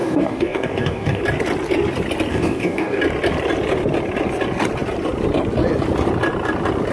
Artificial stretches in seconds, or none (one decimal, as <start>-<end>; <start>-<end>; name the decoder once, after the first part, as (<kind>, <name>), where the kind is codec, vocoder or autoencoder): 0.0-1.2 (codec, DAC); 2.3-3.0